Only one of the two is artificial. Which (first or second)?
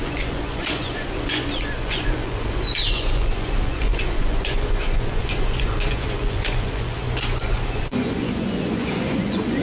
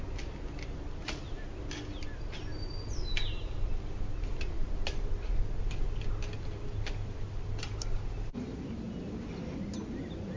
first